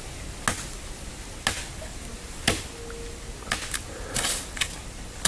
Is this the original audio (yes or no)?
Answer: yes